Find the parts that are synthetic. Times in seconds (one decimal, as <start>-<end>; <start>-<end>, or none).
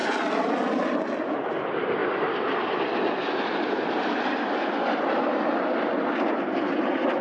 0.0-1.0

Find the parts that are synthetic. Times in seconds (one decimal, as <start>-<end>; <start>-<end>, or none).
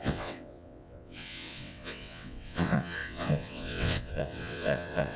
0.0-5.2